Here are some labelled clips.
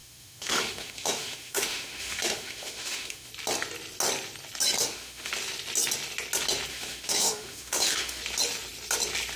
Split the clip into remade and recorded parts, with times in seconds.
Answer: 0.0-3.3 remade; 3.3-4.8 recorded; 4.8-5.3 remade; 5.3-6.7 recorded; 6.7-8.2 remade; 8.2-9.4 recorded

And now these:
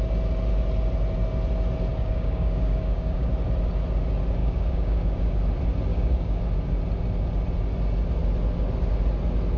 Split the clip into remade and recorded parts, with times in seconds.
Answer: 0.0-1.9 recorded; 1.9-3.3 remade; 3.3-4.4 recorded; 4.4-5.4 remade; 5.4-5.9 recorded; 5.9-6.4 remade; 6.4-9.6 recorded

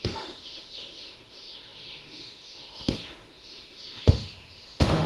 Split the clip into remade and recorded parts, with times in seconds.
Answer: 0.0-5.1 remade